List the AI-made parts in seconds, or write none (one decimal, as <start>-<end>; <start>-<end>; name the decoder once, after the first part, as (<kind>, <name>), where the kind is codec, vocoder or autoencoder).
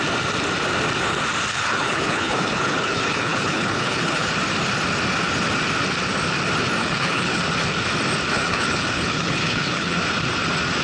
1.5-4.3 (codec, HILCodec); 6.8-7.4; 8.3-10.0